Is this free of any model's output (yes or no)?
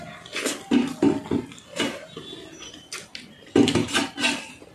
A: yes